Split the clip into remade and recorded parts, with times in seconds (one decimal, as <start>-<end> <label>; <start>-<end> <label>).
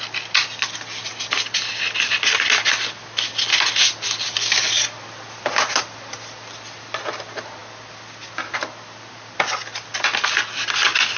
0.0-11.2 recorded